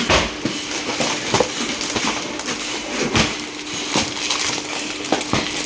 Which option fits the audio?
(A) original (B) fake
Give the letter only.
A